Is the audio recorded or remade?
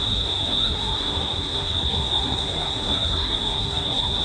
remade